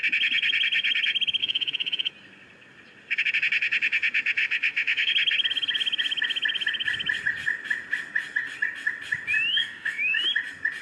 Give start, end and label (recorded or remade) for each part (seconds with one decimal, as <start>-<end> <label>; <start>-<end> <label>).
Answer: 0.0-1.4 recorded; 1.4-2.1 remade; 2.1-4.4 recorded; 4.4-5.1 remade; 5.1-9.5 recorded; 9.5-10.2 remade; 10.2-10.8 recorded